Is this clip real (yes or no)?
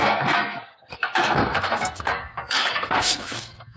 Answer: no